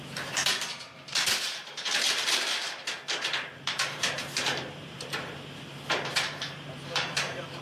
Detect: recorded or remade remade